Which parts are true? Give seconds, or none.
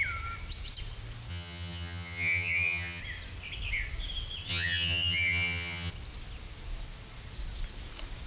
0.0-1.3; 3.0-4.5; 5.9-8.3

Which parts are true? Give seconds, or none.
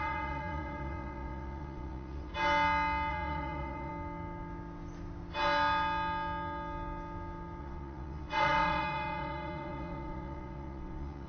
2.3-3.1; 3.9-7.6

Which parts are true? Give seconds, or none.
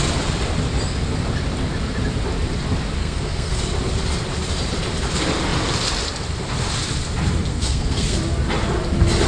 0.0-3.0; 3.6-7.5; 8.2-9.3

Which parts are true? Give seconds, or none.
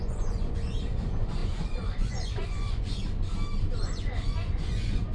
3.0-3.8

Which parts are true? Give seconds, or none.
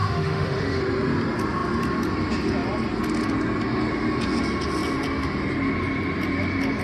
0.8-6.8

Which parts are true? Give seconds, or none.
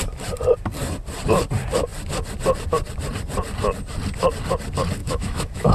0.0-5.0